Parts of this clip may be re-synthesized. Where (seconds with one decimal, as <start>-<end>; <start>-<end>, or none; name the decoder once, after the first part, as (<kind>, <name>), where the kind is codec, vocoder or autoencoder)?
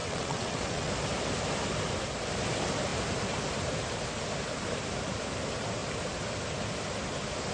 0.0-0.9 (vocoder, WaveNeXt)